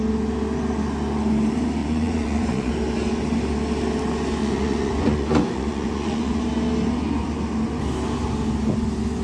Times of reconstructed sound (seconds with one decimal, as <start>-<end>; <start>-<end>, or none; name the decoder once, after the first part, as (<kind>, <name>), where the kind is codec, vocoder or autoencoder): 1.8-2.7 (vocoder, Vocos); 4.4-6.4